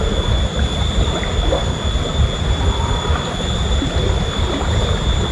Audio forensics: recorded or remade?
recorded